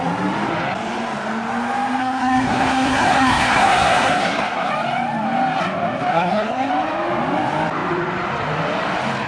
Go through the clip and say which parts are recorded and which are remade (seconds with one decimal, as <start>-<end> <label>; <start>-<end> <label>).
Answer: 0.0-2.0 recorded; 2.0-4.7 remade; 4.7-6.1 recorded; 6.1-6.7 remade; 6.7-9.3 recorded